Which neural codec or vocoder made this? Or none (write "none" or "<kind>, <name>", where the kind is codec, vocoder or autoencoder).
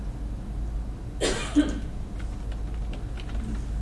none